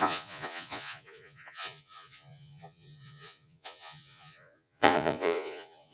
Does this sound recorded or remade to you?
remade